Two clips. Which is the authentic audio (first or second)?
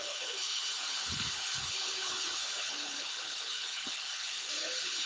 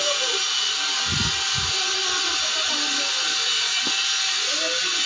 second